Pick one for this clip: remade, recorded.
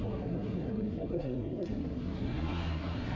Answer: remade